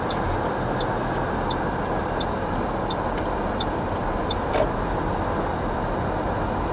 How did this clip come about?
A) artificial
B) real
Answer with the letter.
B